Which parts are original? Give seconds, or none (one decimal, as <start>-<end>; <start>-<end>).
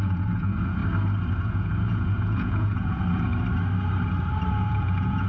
0.8-1.4; 3.3-4.5